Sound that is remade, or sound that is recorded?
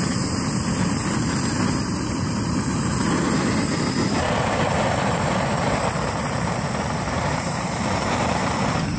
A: remade